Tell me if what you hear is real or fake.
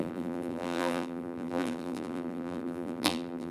fake